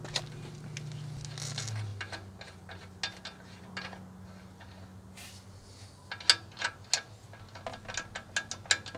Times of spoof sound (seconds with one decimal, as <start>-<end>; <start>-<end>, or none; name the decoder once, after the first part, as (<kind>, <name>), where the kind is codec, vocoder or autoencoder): none